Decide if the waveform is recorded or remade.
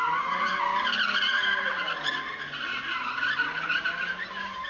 recorded